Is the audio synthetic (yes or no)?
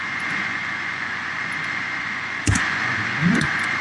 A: yes